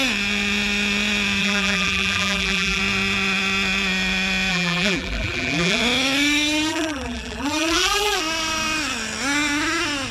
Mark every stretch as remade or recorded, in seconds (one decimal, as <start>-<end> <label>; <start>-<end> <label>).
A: 0.0-1.4 recorded; 1.4-2.8 remade; 2.8-4.5 recorded; 4.5-5.8 remade; 5.8-6.7 recorded; 6.7-8.2 remade; 8.2-10.1 recorded